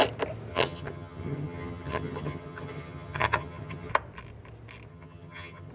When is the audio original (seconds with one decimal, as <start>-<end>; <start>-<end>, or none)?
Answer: 0.0-0.5; 3.9-4.9